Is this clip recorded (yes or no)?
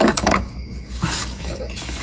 no